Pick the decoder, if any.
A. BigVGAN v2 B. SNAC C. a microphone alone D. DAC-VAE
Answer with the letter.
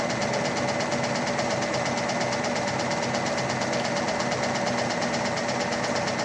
C